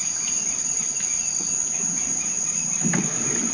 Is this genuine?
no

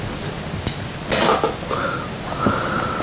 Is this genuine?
yes